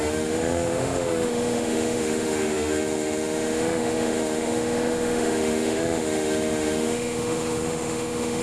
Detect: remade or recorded remade